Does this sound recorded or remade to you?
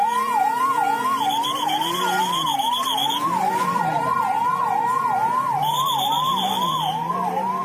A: remade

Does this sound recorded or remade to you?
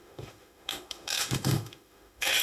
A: remade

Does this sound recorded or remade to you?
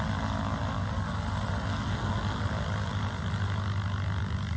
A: recorded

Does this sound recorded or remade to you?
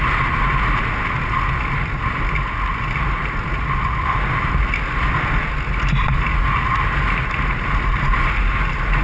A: recorded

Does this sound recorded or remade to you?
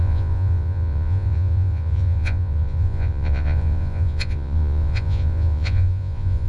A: remade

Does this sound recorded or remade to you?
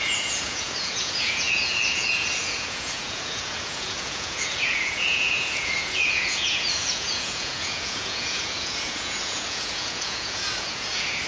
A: remade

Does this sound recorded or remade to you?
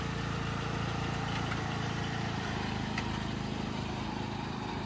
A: remade